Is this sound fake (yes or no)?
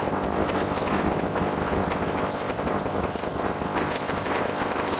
yes